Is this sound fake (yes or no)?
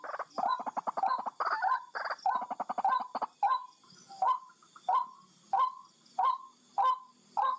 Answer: no